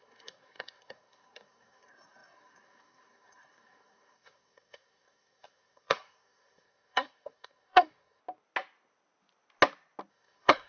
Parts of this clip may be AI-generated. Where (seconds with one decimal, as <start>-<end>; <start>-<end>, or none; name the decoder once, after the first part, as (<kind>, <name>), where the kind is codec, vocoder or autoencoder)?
0.0-8.2 (codec, SNAC); 10.1-10.7